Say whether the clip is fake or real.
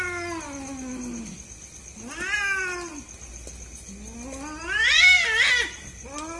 real